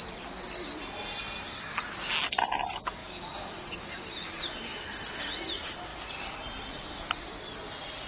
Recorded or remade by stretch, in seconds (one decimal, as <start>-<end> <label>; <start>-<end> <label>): 0.0-8.1 recorded